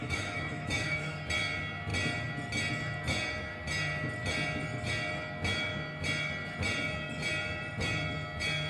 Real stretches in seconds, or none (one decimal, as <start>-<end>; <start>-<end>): 1.2-8.7